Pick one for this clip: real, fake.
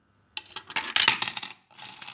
real